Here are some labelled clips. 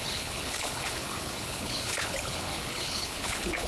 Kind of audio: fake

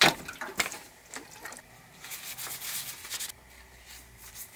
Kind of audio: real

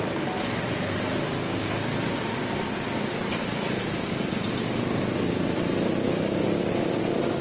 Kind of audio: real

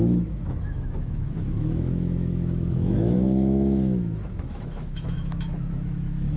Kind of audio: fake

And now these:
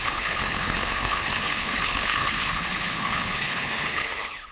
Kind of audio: fake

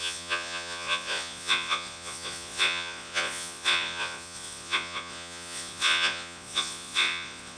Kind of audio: fake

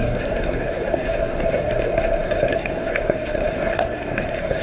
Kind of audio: fake